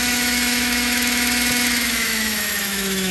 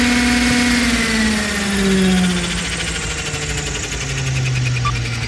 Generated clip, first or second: first